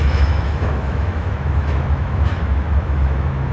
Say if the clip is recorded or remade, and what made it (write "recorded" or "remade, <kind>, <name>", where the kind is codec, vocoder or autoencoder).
remade, autoencoder, DAC-VAE